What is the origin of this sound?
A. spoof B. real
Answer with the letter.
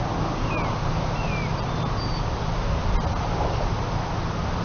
B